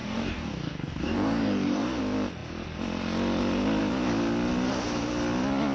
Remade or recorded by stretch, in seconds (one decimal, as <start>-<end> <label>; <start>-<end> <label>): 0.0-2.0 remade; 2.0-5.7 recorded